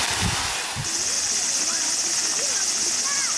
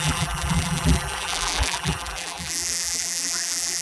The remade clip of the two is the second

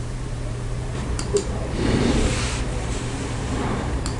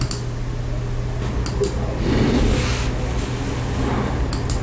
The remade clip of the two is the first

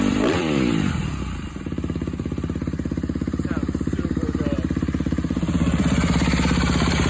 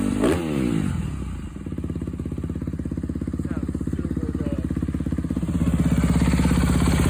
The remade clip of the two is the first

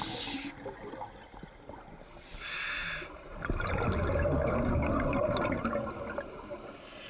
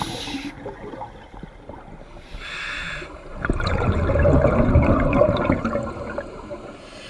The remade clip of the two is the second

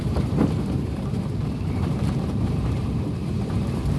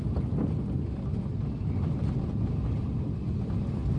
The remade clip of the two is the first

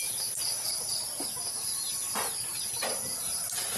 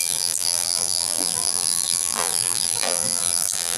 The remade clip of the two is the second